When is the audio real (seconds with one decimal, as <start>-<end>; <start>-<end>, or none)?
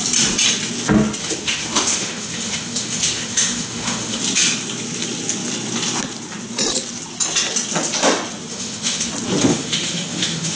0.0-1.2; 4.2-8.5; 9.1-9.5